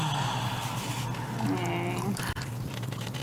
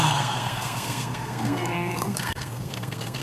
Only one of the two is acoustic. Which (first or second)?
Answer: first